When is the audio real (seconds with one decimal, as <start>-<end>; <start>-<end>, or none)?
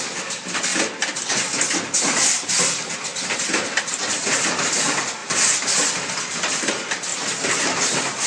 0.7-2.0; 3.1-3.8; 7.1-7.9